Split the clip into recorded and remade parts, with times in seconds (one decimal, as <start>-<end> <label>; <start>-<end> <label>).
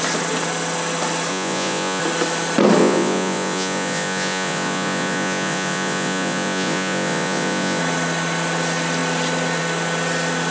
0.0-1.3 recorded; 1.3-2.0 remade; 2.0-2.8 recorded; 2.8-7.8 remade; 7.8-10.5 recorded